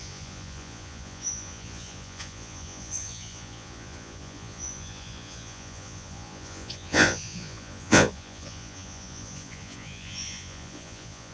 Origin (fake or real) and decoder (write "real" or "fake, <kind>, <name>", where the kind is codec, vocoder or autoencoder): fake, vocoder, Vocos